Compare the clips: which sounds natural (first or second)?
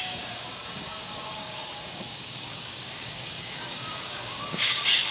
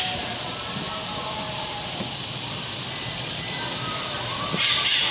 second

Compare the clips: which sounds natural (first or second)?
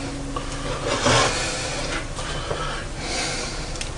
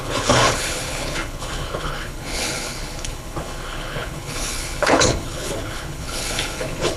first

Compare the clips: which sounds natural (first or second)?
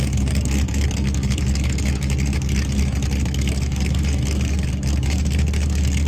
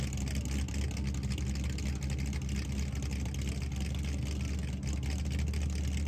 second